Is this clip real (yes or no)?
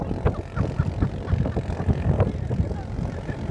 yes